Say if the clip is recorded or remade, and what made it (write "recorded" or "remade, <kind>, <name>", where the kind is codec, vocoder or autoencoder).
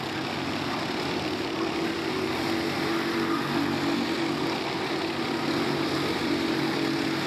recorded